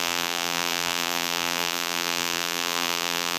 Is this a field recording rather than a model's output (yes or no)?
no